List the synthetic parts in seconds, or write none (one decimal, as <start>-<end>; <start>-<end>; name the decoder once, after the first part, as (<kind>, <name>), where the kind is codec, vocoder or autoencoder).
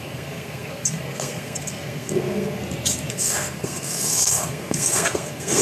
0.0-2.6 (codec, SNAC); 3.1-5.6